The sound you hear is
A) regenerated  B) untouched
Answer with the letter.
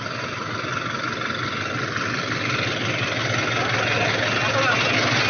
B